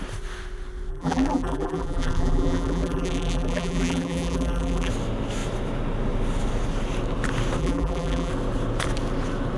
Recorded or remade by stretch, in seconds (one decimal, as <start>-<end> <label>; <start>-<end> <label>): 0.0-0.9 recorded; 0.9-4.9 remade; 4.9-7.6 recorded; 7.6-8.3 remade; 8.3-9.6 recorded

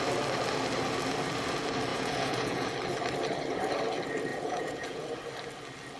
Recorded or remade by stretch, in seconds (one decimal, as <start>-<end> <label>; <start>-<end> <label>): 0.0-1.9 recorded; 1.9-2.7 remade; 2.7-4.3 recorded; 4.3-5.0 remade; 5.0-6.0 recorded

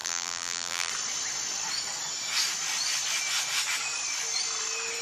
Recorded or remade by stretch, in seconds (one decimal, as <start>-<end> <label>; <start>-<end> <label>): 0.0-0.9 remade; 0.9-5.0 recorded